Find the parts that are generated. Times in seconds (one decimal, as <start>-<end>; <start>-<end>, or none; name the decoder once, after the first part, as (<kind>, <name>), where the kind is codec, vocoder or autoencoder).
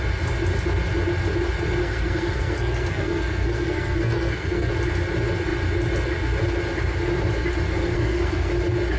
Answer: 1.8-4.7 (codec, SNAC); 7.8-8.5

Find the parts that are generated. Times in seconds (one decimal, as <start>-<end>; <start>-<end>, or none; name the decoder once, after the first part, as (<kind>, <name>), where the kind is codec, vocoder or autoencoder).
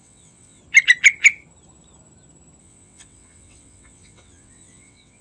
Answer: 0.0-0.6 (vocoder, WaveNeXt); 2.6-5.2